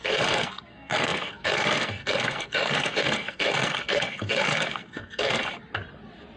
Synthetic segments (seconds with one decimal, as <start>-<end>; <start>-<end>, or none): 0.0-5.4